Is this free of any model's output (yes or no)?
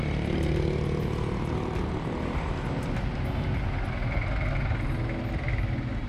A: yes